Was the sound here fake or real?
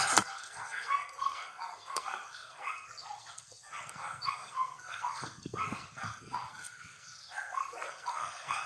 fake